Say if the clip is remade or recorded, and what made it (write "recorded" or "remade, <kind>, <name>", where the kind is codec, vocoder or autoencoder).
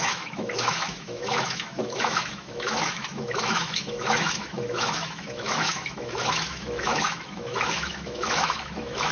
remade, autoencoder, DAC-VAE